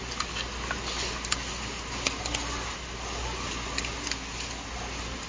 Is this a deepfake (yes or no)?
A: no